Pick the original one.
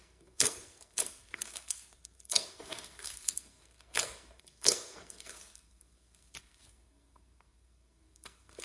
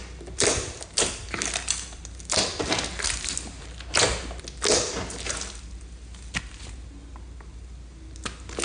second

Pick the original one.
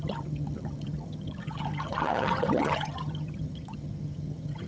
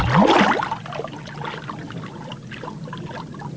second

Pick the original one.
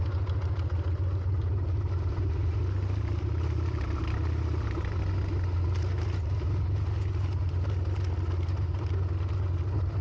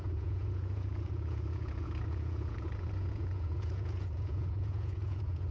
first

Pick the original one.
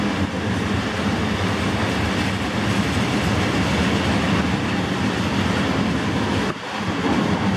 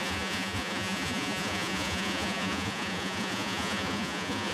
first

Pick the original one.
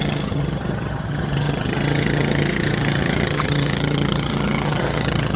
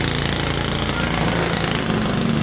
second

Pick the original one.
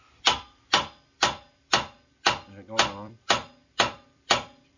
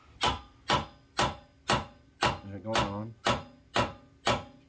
second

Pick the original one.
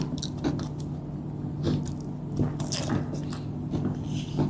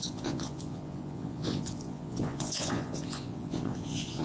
first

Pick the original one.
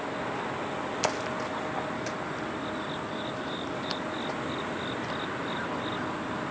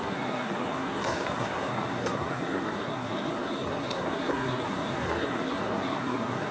first